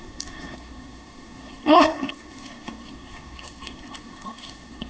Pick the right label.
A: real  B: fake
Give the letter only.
B